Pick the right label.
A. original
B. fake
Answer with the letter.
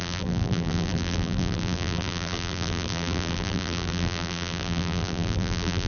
B